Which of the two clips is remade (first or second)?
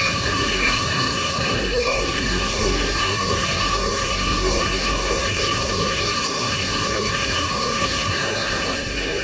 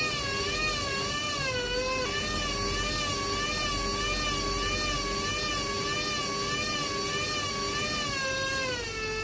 first